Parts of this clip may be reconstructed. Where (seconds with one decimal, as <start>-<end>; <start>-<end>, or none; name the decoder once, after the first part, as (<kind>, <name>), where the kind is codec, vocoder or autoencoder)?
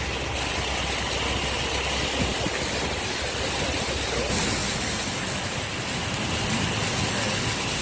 none